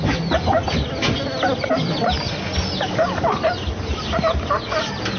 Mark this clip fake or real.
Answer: real